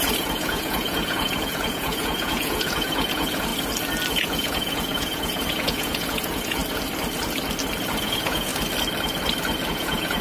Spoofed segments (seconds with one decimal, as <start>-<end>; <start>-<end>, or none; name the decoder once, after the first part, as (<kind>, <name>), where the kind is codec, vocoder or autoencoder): 0.0-3.5 (vocoder, Vocos); 4.1-6.6; 8.0-8.5; 9.7-10.2